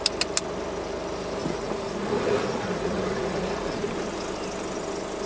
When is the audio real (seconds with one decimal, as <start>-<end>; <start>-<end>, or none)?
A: 0.0-1.4; 3.9-5.3